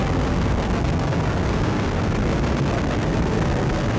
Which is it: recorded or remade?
remade